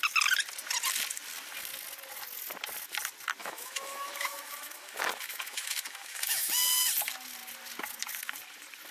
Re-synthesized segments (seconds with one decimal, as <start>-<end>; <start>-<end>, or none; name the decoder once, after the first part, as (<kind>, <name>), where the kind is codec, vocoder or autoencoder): 3.4-6.5 (autoencoder, DAC-VAE)